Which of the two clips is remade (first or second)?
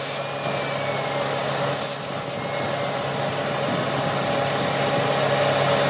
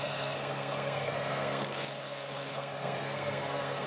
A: second